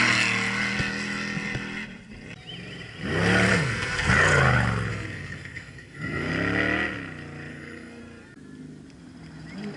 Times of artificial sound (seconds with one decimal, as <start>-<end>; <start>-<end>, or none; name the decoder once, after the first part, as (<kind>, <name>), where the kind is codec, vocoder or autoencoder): 3.5-4.1 (codec, SNAC); 4.9-6.3; 7.5-8.0